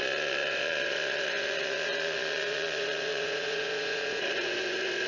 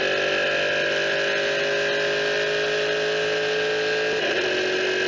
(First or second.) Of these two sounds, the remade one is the first